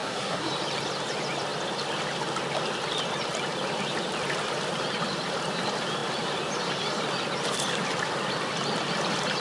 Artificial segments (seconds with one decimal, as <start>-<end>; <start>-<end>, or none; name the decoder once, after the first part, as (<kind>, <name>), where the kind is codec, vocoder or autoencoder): 0.0-0.5 (codec, SNAC)